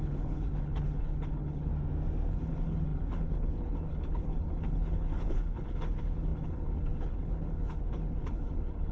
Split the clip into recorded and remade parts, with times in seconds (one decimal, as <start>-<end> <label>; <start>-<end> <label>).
0.0-1.7 remade; 1.7-2.3 recorded; 2.3-8.9 remade